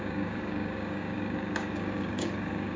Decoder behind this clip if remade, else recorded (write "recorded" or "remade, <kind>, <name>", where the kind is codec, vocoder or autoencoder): remade, codec, DAC